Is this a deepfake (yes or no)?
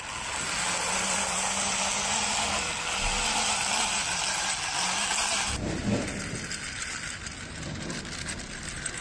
no